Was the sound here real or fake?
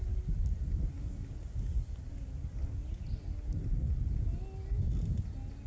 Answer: real